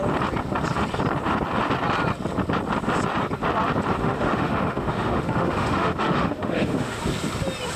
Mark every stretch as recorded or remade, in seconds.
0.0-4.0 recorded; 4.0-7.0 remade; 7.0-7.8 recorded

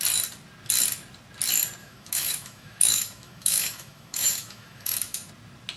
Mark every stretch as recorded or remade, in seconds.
0.0-1.8 recorded; 1.8-5.3 remade; 5.3-5.8 recorded

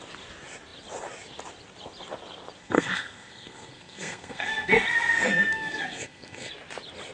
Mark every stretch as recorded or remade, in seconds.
0.0-2.6 recorded; 2.6-6.5 remade; 6.5-7.1 recorded

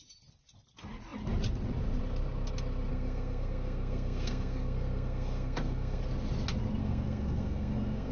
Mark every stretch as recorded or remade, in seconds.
0.0-2.9 recorded; 2.9-6.0 remade; 6.0-6.8 recorded; 6.8-8.1 remade

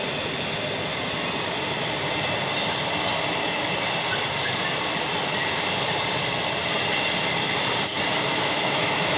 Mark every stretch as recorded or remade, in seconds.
0.0-8.3 recorded; 8.3-9.2 remade

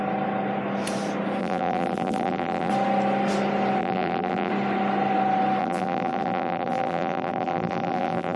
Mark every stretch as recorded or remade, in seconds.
0.0-1.4 recorded; 1.4-2.7 remade; 2.7-3.8 recorded; 3.8-4.5 remade; 4.5-5.6 recorded; 5.6-8.4 remade

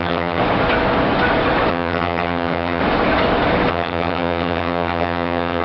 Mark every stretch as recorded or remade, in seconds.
0.0-0.4 remade; 0.4-1.7 recorded; 1.7-2.8 remade; 2.8-3.7 recorded; 3.7-5.6 remade